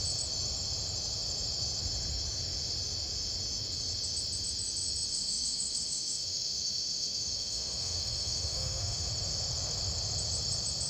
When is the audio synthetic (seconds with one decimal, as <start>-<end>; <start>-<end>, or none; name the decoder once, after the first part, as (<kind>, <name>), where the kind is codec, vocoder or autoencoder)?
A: 5.1-9.1 (autoencoder, DAC-VAE)